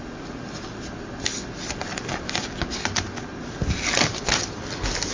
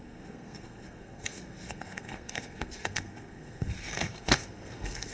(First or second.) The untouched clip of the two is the first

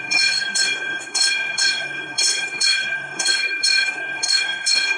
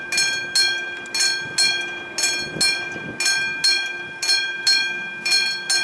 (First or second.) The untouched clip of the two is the second